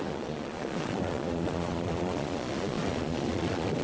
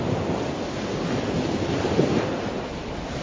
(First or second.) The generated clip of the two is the first